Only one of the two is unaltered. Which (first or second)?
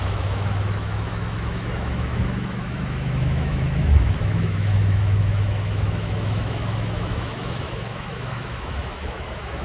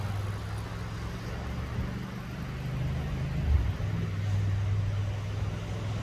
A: second